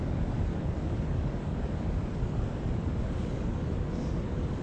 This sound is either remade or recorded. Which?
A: remade